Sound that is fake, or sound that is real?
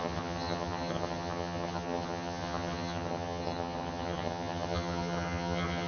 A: fake